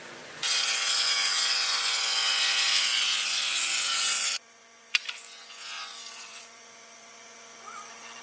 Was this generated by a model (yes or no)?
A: yes